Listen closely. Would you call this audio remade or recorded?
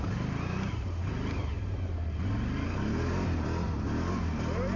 recorded